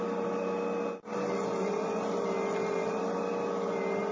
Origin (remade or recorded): recorded